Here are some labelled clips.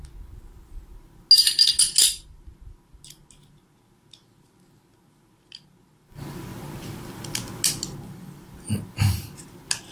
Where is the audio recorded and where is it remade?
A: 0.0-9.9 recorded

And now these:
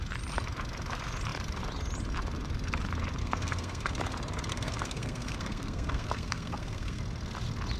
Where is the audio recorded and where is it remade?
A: 0.0-3.2 recorded; 3.2-3.9 remade; 3.9-4.5 recorded; 4.5-7.0 remade; 7.0-7.8 recorded

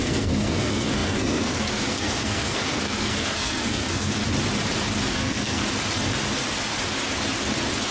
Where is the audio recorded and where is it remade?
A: 0.0-4.2 remade; 4.2-5.1 recorded; 5.1-5.6 remade; 5.6-7.9 recorded

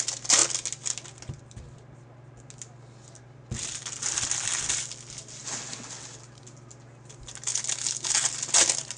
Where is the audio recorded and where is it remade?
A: 0.0-9.0 recorded

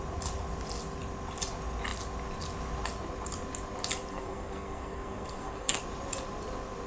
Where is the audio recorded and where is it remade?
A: 0.0-4.1 recorded; 4.1-5.8 remade; 5.8-6.9 recorded